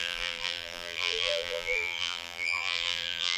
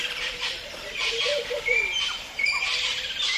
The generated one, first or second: first